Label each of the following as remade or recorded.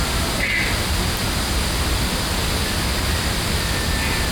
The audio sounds recorded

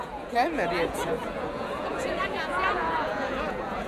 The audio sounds remade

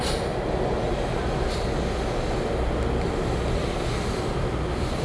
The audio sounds recorded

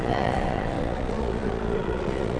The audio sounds remade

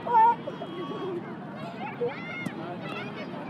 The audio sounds recorded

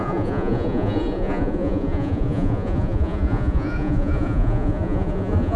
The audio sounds remade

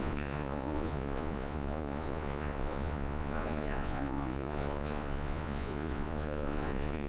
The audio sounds remade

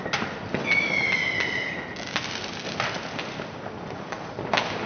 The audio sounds recorded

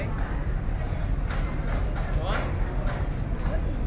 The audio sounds recorded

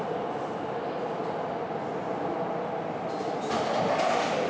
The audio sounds recorded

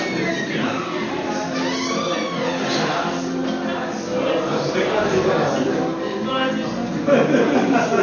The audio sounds recorded